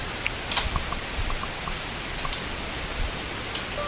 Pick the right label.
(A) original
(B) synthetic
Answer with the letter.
A